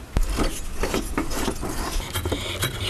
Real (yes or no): yes